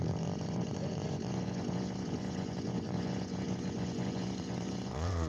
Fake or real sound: fake